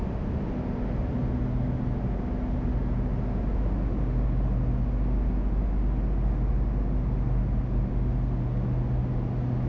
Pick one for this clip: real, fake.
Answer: real